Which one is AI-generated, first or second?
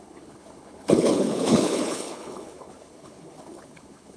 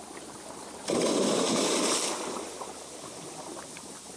first